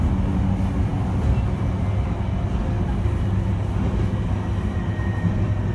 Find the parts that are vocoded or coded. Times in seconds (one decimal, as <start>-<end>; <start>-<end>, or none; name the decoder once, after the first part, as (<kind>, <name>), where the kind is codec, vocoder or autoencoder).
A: none